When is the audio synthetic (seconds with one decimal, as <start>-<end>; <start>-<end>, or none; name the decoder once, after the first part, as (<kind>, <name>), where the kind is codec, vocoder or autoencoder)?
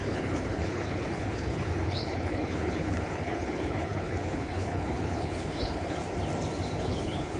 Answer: 0.0-6.0 (codec, HILCodec); 6.8-7.4